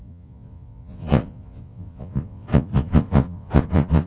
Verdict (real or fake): fake